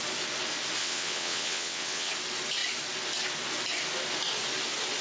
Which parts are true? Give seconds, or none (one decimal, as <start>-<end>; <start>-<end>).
0.0-0.8; 2.1-5.0